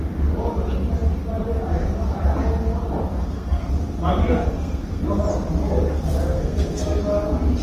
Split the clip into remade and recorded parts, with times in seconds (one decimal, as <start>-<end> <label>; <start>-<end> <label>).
0.0-3.1 recorded; 3.1-3.7 remade; 3.7-4.2 recorded; 4.2-5.0 remade; 5.0-6.2 recorded; 6.2-7.0 remade; 7.0-7.6 recorded